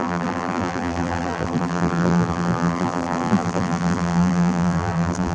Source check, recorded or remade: remade